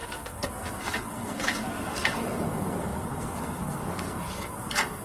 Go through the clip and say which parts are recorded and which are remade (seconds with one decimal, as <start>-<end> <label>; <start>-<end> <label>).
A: 0.0-5.0 remade